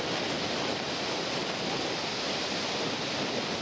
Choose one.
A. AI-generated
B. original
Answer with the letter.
B